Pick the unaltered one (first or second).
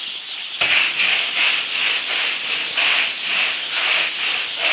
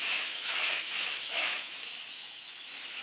first